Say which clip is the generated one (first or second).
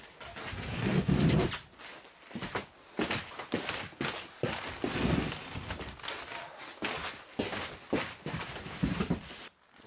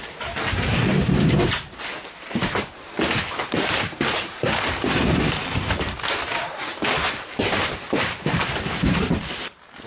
second